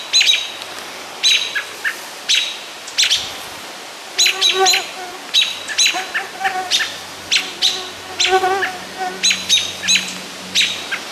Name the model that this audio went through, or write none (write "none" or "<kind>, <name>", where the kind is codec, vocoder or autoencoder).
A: none